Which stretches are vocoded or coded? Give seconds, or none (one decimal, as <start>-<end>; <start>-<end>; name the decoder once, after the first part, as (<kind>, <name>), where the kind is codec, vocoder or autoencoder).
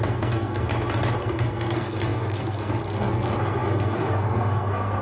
0.0-0.7 (codec, SNAC); 1.2-5.0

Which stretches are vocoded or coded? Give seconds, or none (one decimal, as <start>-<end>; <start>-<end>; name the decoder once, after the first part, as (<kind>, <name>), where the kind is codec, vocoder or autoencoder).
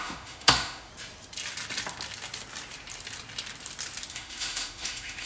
0.0-0.9 (autoencoder, DAC-VAE); 4.1-5.3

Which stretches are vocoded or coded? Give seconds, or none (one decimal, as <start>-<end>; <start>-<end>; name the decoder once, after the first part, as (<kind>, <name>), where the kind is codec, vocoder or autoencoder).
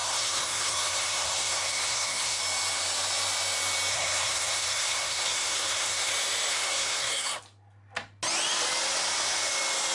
0.0-2.4 (codec, SNAC); 3.9-6.1; 6.5-7.4